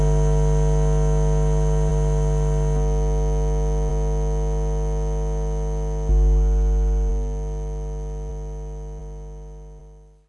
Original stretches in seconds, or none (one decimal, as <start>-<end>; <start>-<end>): 0.0-10.3